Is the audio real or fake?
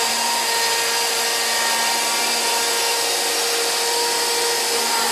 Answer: real